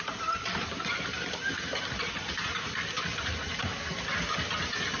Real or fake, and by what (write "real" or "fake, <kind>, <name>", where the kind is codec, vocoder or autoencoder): real